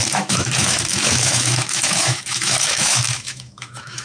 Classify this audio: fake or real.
fake